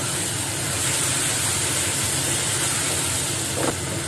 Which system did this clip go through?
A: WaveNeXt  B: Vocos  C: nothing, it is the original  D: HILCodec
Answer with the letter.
C